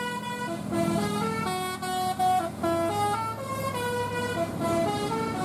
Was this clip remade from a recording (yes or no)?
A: no